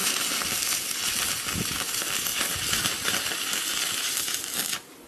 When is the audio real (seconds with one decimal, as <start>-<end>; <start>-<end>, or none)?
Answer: none